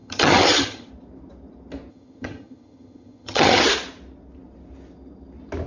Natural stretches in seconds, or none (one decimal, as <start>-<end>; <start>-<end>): 0.9-1.9; 3.6-5.7